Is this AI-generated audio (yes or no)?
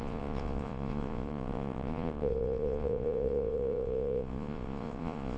yes